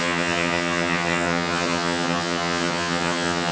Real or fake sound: fake